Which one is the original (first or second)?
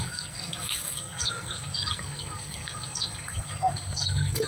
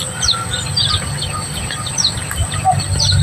second